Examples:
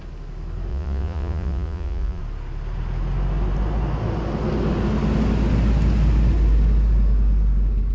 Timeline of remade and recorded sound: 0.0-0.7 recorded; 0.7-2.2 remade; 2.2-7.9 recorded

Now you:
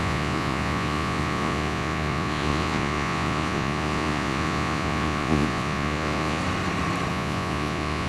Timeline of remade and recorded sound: 0.0-6.4 remade; 6.4-7.1 recorded; 7.1-8.1 remade

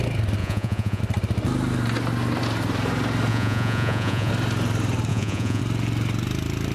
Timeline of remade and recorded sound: 0.0-0.4 recorded; 0.4-1.0 remade; 1.0-3.3 recorded; 3.3-4.3 remade; 4.3-5.1 recorded; 5.1-5.6 remade; 5.6-6.7 recorded

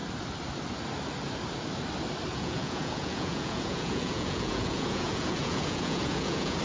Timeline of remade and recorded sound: 0.0-2.3 recorded; 2.3-6.6 remade

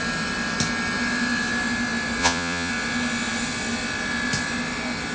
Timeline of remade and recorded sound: 0.0-2.2 recorded; 2.2-2.7 remade; 2.7-5.1 recorded

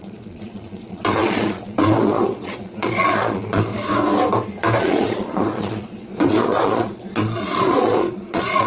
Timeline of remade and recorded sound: 0.0-3.7 remade; 3.7-4.8 recorded; 4.8-8.7 remade